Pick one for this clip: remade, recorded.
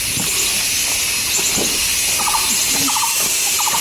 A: recorded